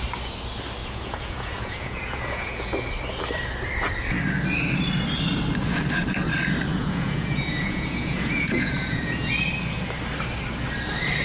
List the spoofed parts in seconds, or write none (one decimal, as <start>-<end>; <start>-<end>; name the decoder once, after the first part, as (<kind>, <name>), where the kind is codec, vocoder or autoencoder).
0.8-2.7 (vocoder, Vocos); 6.7-9.3